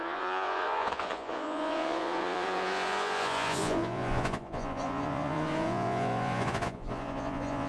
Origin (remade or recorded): remade